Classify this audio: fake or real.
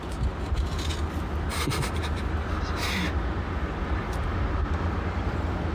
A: real